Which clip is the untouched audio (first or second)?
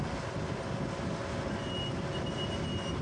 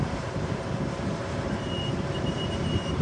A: first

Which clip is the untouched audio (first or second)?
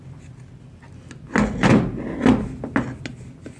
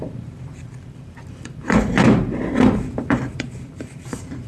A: first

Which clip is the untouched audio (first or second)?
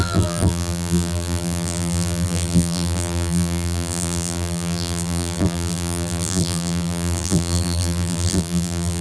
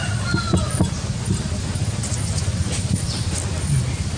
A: second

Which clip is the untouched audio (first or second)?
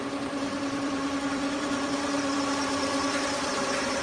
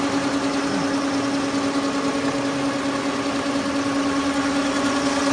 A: second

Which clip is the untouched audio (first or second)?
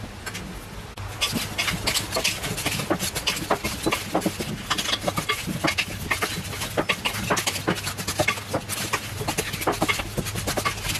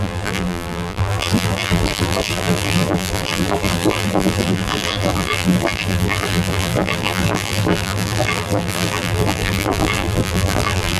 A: first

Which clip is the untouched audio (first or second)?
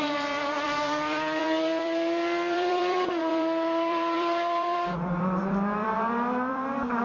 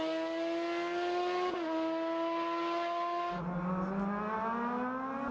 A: second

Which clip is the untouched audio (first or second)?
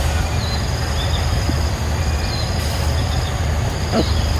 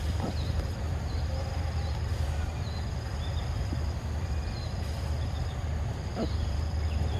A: first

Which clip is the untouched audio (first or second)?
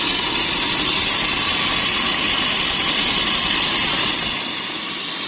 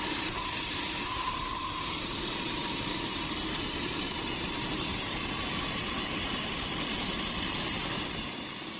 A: first